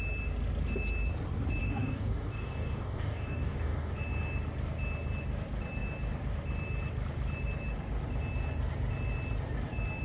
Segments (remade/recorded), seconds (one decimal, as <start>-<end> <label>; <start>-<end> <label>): 0.0-1.6 recorded; 1.6-3.9 remade; 3.9-10.0 recorded